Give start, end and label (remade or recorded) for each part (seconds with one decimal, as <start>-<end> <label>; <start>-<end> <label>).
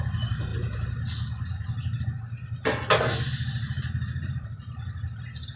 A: 0.0-5.6 recorded